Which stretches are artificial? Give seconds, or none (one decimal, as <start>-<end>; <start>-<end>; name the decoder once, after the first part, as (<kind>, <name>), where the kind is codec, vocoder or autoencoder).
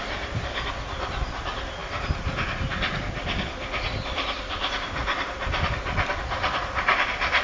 0.0-1.8 (vocoder, BigVGAN v2); 3.9-5.0; 6.1-7.4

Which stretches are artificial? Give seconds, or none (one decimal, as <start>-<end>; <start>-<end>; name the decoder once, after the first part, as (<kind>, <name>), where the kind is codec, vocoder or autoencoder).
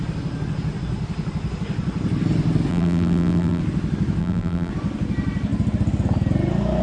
2.7-3.6 (vocoder, BigVGAN v2); 4.2-4.7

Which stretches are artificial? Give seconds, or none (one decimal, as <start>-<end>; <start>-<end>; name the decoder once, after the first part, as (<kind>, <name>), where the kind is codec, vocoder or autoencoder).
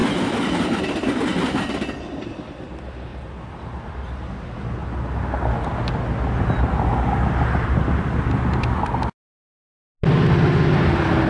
0.0-0.8 (vocoder, BigVGAN v2); 3.1-3.9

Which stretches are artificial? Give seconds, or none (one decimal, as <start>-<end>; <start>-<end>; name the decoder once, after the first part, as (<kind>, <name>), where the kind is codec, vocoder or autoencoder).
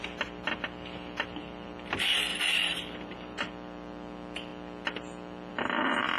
2.3-3.5 (vocoder, BigVGAN v2)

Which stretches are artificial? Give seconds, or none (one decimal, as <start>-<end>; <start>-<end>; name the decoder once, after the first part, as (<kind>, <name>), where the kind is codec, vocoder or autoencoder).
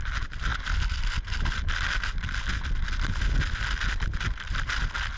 none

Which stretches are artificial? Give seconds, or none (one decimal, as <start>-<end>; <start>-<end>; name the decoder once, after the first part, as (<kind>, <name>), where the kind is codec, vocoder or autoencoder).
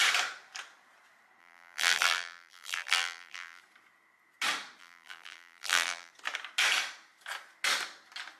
1.4-3.6 (vocoder, BigVGAN v2); 4.8-6.1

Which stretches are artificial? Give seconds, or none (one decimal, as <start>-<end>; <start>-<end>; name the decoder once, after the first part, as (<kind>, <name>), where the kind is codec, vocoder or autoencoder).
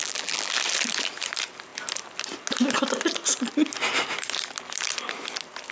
0.0-0.5 (vocoder, BigVGAN v2)